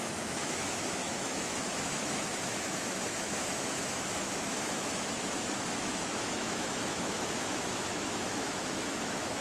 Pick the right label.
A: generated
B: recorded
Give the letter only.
A